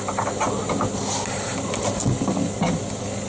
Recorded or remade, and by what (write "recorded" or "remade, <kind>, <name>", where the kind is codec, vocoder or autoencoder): recorded